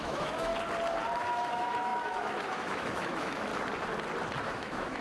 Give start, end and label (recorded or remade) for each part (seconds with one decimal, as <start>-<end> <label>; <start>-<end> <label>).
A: 0.0-0.5 remade; 0.5-1.2 recorded; 1.2-3.5 remade; 3.5-4.4 recorded; 4.4-5.0 remade